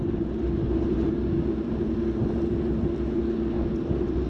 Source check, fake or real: real